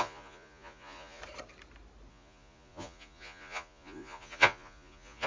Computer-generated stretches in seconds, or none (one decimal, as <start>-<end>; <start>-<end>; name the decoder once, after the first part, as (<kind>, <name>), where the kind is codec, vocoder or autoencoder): 0.0-1.2 (vocoder, Vocos); 2.1-5.3